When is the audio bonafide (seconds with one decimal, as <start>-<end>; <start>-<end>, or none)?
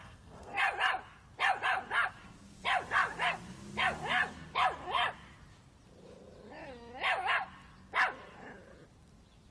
0.6-9.5